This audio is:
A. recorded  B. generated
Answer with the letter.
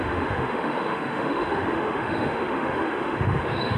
B